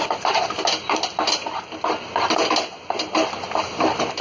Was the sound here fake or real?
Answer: real